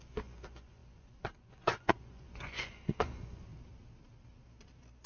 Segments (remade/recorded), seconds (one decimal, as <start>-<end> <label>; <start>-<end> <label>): 0.0-3.5 remade; 3.5-5.1 recorded